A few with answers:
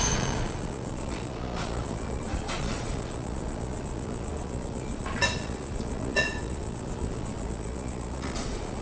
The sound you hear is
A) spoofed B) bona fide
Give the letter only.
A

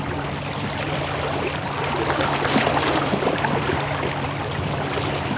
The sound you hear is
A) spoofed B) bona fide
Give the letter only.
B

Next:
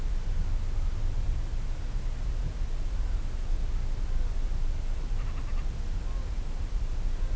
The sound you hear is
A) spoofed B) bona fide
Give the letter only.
B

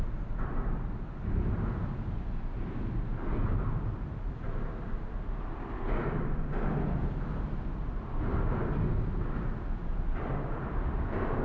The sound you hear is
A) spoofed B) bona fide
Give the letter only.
B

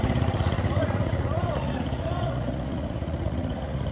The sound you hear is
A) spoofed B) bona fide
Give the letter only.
A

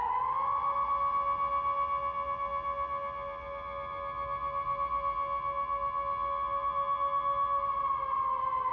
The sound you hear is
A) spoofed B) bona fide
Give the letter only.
B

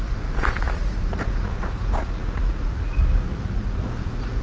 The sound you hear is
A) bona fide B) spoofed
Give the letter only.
B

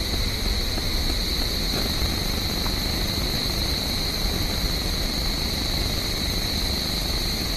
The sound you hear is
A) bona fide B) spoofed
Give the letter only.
A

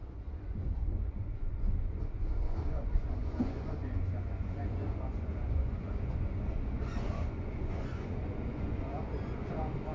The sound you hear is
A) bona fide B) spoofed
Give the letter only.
B